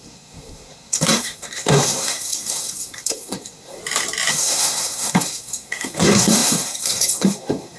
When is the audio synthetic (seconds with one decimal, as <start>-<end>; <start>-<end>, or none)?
0.0-3.8; 4.3-7.8